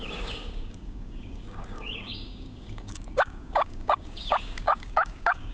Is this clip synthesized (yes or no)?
yes